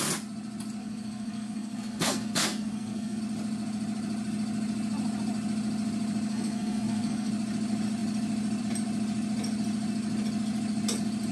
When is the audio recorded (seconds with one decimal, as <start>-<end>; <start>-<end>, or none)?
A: 0.0-0.8; 3.2-6.3; 7.3-11.3

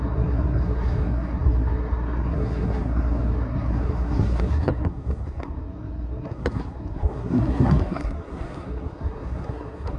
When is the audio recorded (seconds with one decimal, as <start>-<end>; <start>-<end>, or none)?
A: none

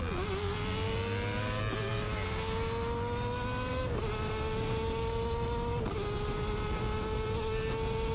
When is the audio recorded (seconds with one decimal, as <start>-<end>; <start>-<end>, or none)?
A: 0.0-8.1

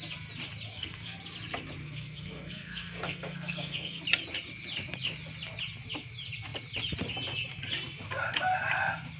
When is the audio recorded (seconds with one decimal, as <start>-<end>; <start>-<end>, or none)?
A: 0.0-0.7; 1.2-1.8; 4.0-9.2

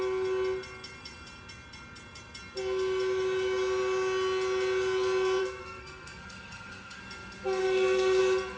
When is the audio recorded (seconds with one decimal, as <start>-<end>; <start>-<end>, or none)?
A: 0.0-5.4; 7.0-7.6; 8.2-8.6

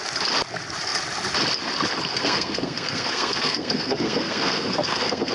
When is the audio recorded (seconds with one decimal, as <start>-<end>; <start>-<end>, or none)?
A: 0.0-2.1

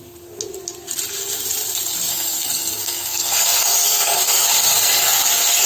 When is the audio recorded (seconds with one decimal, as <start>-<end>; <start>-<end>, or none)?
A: 0.0-2.1